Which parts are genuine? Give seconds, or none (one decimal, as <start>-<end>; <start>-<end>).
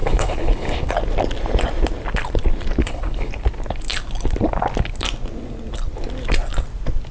0.9-2.8; 3.3-7.1